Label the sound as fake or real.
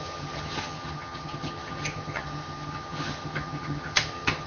fake